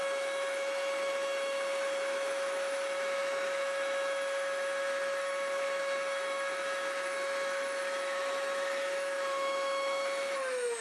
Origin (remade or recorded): remade